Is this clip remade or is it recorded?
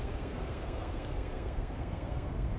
remade